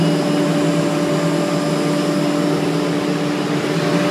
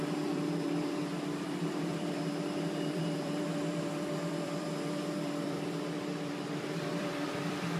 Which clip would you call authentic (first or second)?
first